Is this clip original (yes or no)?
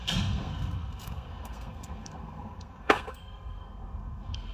no